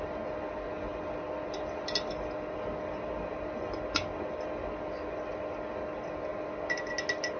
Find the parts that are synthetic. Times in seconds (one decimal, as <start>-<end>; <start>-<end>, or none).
none